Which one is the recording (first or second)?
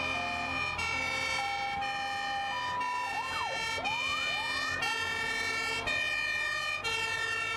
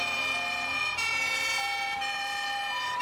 first